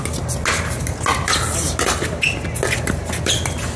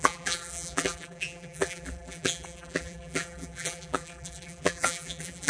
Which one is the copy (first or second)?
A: second